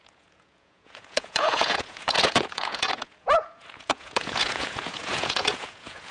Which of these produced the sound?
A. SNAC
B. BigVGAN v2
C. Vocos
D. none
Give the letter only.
C